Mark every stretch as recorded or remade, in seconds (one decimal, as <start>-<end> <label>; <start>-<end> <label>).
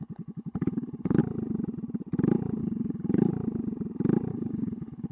0.0-1.2 remade; 1.2-2.6 recorded; 2.6-3.3 remade; 3.3-4.3 recorded; 4.3-5.1 remade